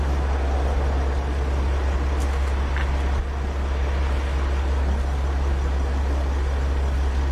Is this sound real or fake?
real